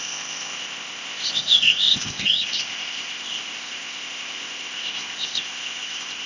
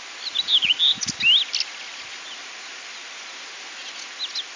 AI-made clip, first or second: first